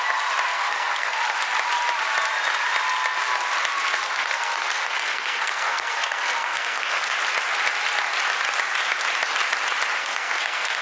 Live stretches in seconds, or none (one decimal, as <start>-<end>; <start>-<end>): 0.0-0.5; 1.2-4.0; 7.1-10.0

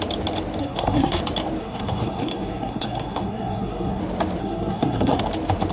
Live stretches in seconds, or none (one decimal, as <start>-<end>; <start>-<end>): 0.0-0.6; 1.2-1.6; 4.0-4.4; 5.2-5.7

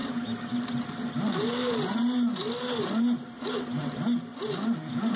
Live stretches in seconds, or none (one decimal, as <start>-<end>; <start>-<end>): 0.0-5.2

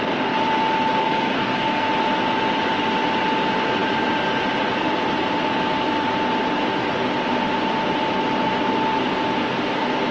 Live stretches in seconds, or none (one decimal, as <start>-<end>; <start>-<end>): 0.0-1.0; 1.9-10.1